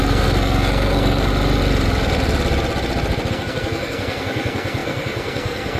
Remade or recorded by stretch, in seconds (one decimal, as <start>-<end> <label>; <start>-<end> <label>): 0.0-1.3 remade; 1.3-3.3 recorded; 3.3-5.8 remade